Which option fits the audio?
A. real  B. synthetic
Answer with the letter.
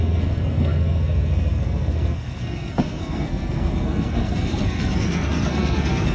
B